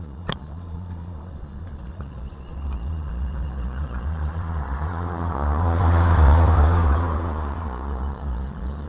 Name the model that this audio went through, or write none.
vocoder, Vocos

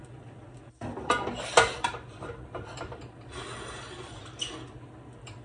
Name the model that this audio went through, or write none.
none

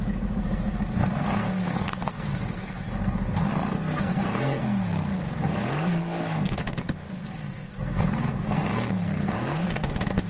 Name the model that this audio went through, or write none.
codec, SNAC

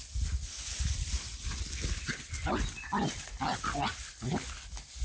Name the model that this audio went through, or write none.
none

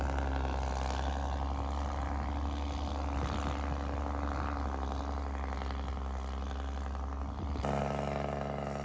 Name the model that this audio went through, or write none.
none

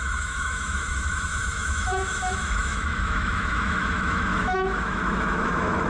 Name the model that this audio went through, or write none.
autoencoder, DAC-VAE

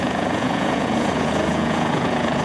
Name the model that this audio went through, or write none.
vocoder, Vocos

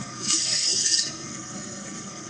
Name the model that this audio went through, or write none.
codec, SNAC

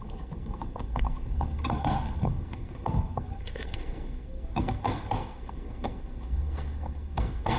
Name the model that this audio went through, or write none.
codec, SNAC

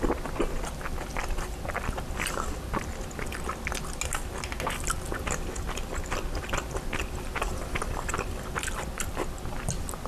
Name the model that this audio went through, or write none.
none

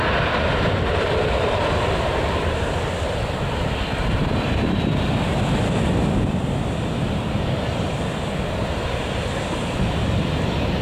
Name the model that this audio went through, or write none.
none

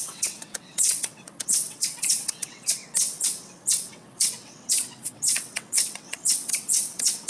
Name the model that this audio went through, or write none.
vocoder, WaveNeXt